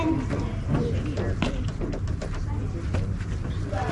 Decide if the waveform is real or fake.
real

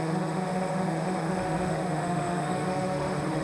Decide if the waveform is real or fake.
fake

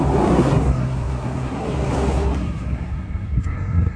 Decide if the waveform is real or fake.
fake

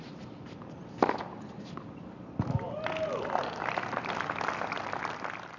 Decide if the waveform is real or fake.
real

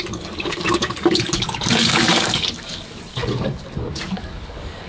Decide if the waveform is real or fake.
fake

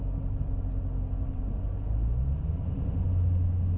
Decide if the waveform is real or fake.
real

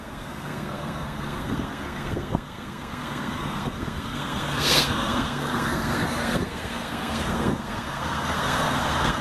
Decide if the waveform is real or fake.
fake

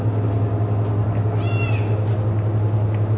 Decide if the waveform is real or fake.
real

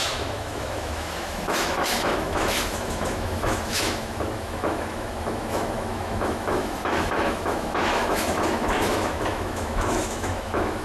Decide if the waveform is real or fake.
fake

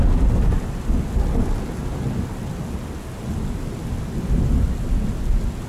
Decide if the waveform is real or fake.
real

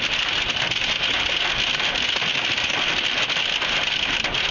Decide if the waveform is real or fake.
real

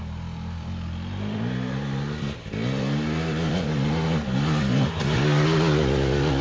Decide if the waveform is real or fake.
real